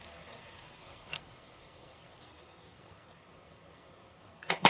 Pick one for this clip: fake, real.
fake